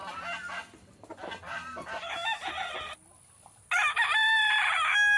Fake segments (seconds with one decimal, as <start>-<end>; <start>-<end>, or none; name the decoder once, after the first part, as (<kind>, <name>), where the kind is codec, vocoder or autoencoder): none